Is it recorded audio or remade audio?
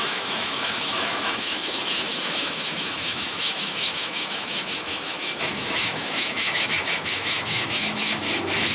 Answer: remade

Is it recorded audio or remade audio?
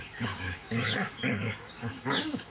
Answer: remade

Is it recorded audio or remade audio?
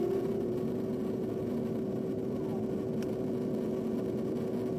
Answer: recorded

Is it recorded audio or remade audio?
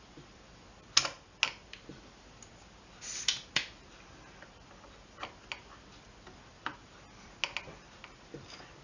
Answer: recorded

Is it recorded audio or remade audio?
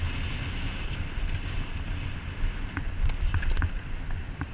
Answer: recorded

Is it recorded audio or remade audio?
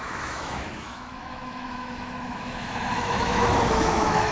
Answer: remade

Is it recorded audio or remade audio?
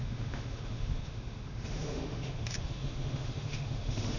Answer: remade